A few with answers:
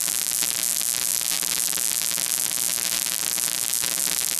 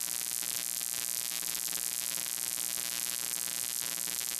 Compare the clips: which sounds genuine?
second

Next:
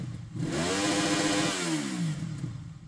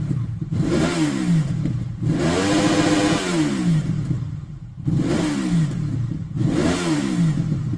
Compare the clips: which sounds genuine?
first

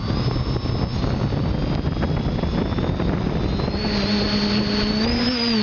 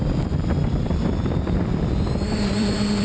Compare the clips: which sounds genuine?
first